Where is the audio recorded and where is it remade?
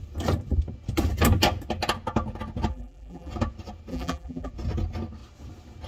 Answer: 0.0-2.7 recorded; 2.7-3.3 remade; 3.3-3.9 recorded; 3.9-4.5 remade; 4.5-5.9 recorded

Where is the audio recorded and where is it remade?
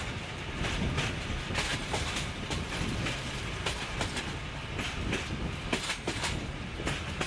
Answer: 0.0-1.7 recorded; 1.7-4.2 remade; 4.2-7.3 recorded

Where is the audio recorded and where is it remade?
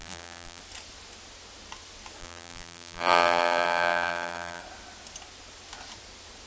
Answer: 0.0-0.6 remade; 0.6-2.2 recorded; 2.2-4.6 remade; 4.6-6.5 recorded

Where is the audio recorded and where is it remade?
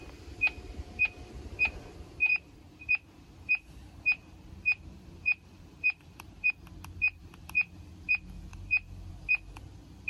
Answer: 0.0-2.3 recorded; 2.3-6.5 remade; 6.5-7.2 recorded; 7.2-7.9 remade; 7.9-8.5 recorded; 8.5-9.1 remade; 9.1-10.1 recorded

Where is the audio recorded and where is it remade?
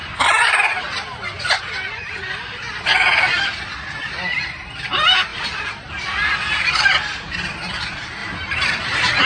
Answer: 0.0-0.7 remade; 0.7-5.3 recorded; 5.3-5.9 remade; 5.9-9.3 recorded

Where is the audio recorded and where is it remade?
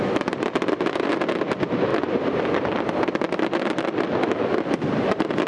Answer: 0.0-1.9 recorded; 1.9-4.2 remade; 4.2-5.5 recorded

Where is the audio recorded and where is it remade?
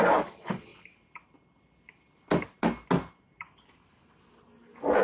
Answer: 0.0-5.0 recorded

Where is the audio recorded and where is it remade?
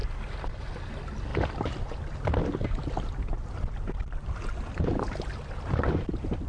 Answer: 0.0-1.3 recorded; 1.3-2.3 remade; 2.3-6.5 recorded